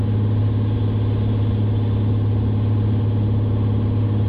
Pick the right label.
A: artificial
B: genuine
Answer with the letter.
B